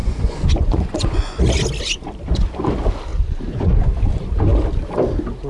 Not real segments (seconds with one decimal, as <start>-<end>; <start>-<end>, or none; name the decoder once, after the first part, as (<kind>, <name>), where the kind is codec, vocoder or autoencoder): 0.0-1.4 (vocoder, Vocos); 3.1-3.9